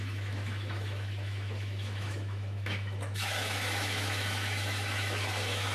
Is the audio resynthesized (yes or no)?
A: yes